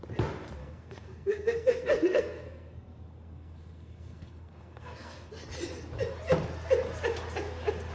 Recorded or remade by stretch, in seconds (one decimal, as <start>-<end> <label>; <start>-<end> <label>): 0.0-0.6 recorded; 0.6-5.3 remade; 5.3-7.9 recorded